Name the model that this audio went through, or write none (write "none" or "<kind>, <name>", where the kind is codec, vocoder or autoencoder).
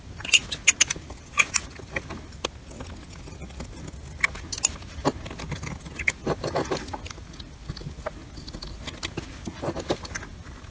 none